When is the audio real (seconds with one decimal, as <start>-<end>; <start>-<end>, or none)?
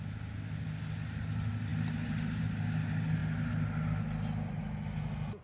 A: 0.0-5.4